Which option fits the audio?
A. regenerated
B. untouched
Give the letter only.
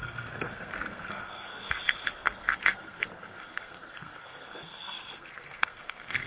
A